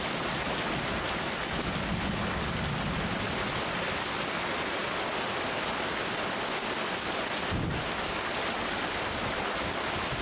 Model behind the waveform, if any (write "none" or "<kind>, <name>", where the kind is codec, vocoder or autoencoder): none